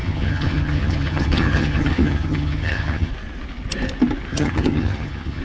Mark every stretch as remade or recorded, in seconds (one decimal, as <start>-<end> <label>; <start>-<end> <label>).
0.0-3.1 remade; 3.1-4.3 recorded; 4.3-5.4 remade